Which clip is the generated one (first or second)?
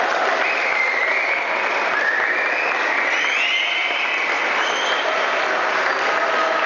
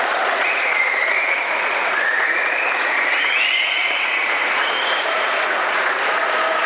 second